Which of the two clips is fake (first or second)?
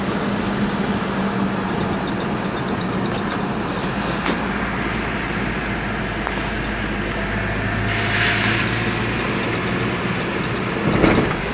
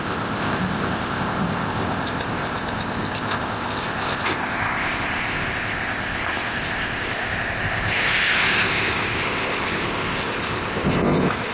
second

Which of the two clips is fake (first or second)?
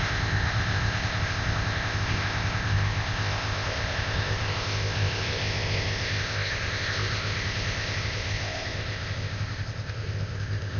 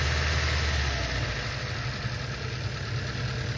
first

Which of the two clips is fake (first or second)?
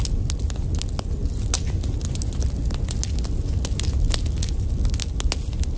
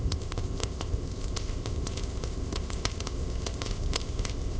second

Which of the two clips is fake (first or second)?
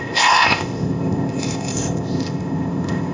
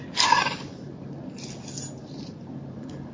first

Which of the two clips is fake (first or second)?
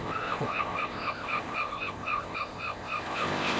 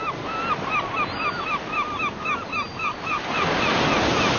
first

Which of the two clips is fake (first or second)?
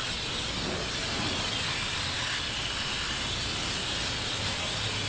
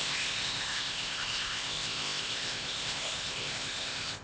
second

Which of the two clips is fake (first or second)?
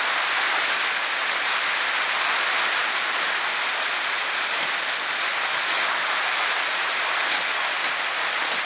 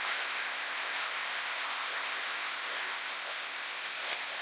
second